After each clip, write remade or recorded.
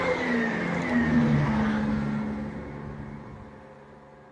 recorded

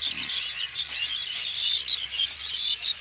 remade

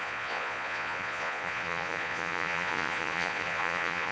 remade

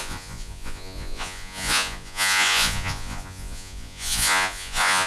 remade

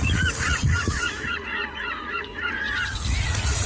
remade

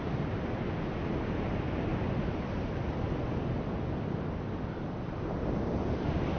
recorded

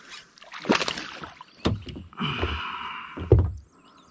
recorded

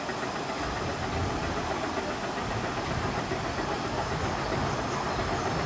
recorded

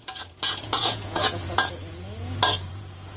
remade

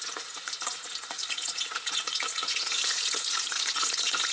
remade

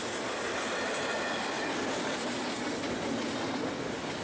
recorded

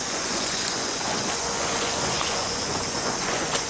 remade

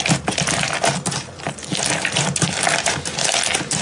recorded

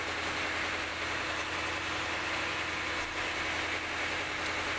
recorded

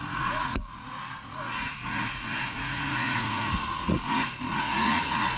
remade